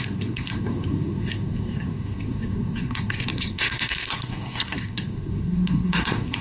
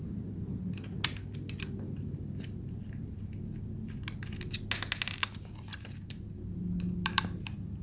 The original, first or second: second